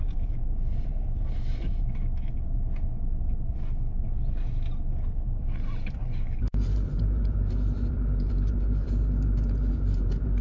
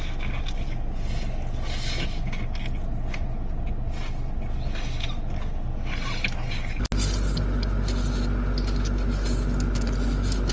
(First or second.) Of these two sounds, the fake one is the first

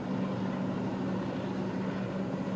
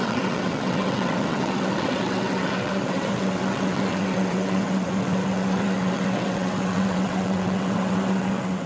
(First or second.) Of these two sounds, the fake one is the second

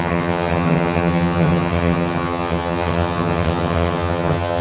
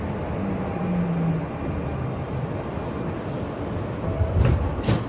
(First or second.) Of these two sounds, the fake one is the first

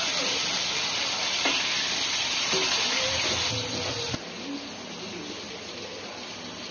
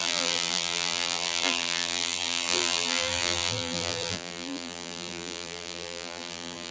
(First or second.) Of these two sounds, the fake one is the second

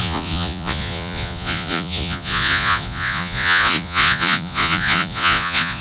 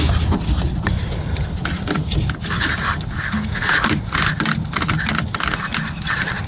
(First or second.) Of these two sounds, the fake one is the first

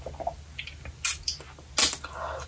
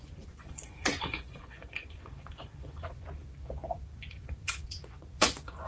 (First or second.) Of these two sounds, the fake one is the second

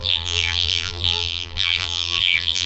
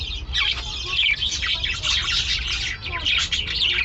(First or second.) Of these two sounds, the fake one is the first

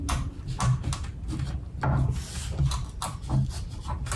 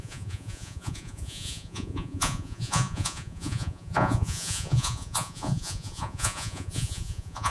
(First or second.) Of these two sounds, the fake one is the second